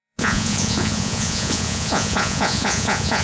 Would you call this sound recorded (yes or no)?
no